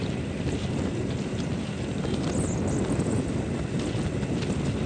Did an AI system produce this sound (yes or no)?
no